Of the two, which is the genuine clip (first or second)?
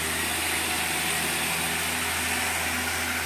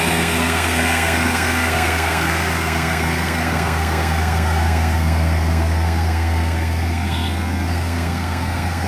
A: first